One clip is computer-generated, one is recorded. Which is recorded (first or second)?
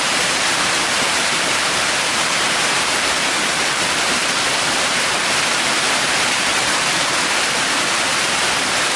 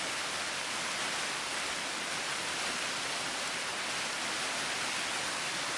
second